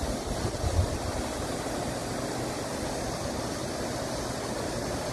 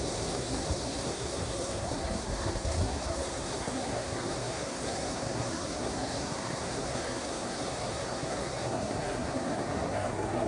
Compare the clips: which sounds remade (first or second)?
second